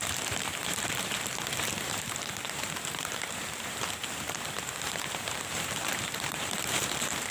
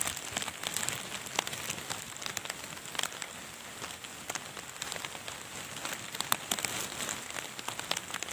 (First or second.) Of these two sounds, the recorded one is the second